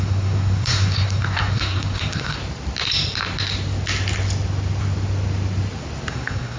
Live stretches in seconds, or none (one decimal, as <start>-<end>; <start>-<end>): 2.4-6.1

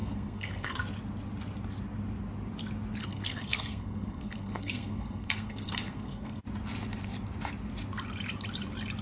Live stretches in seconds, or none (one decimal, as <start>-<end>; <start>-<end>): 0.8-3.0; 6.4-9.0